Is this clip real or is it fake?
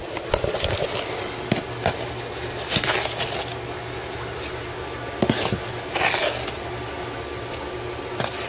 real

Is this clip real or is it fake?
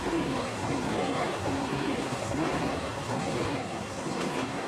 fake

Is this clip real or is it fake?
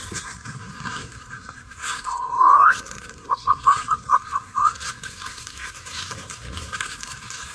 fake